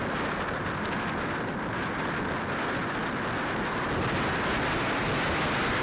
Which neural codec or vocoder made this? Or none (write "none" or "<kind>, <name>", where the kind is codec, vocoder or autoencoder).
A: none